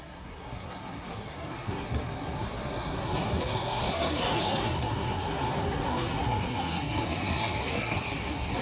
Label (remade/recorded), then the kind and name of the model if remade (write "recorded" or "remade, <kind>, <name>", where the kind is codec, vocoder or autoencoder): remade, codec, SNAC